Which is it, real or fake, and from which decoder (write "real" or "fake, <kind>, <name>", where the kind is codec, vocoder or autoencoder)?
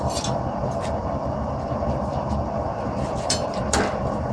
fake, vocoder, BigVGAN v2